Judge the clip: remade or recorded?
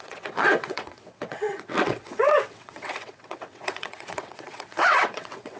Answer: remade